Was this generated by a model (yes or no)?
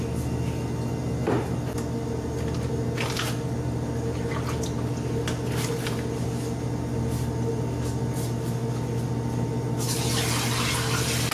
no